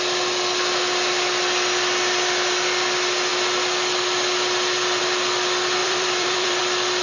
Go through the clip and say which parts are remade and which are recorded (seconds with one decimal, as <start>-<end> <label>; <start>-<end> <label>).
0.0-5.8 recorded; 5.8-6.6 remade; 6.6-7.0 recorded